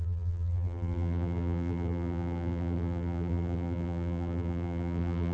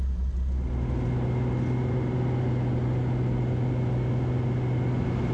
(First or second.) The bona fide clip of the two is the second